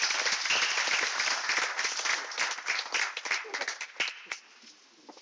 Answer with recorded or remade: recorded